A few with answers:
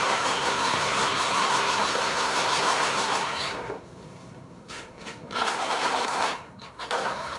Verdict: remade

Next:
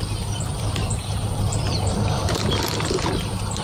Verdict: remade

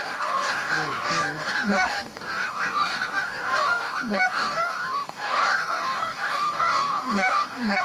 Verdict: remade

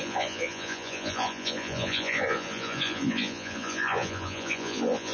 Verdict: remade